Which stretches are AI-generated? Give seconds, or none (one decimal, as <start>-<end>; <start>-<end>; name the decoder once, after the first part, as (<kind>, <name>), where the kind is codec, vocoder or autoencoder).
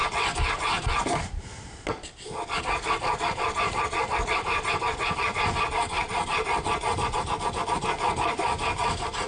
none